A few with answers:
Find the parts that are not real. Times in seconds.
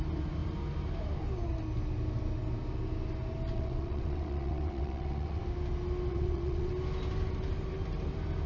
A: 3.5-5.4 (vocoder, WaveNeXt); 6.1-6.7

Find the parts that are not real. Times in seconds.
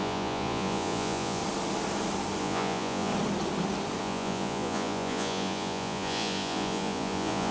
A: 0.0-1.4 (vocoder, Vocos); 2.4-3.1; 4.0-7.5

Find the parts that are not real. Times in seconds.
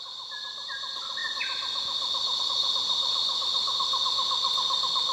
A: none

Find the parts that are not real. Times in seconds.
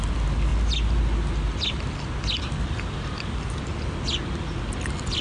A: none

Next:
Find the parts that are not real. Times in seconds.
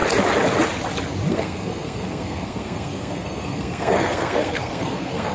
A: 1.3-5.3 (codec, SNAC)